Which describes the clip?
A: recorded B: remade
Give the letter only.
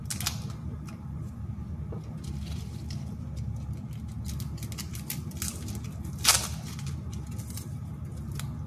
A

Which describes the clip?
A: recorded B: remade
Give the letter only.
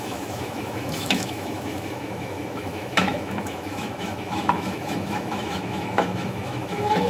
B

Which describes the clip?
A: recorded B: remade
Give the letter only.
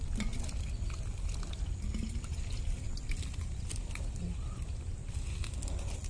A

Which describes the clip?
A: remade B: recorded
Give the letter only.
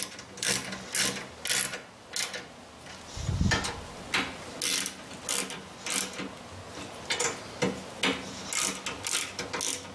B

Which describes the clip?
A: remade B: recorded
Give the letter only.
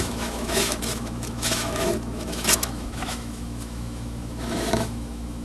A